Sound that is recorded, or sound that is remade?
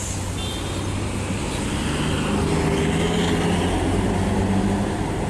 recorded